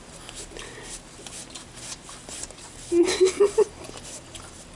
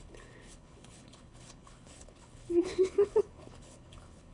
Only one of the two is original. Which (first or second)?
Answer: first